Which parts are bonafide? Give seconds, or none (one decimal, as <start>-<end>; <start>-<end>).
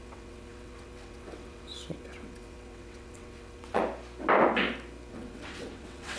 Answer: 3.8-5.1